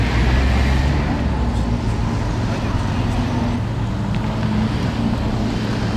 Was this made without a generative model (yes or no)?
yes